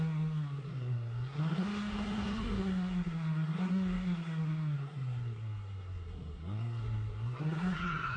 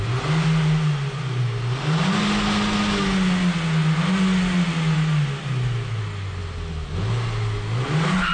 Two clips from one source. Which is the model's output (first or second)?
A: first